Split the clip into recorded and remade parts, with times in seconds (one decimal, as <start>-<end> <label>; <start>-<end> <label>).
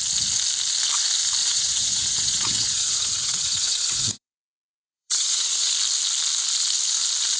0.0-1.4 recorded; 1.4-5.7 remade; 5.7-7.4 recorded